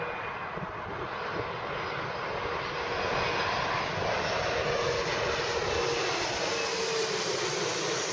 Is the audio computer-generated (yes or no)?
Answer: no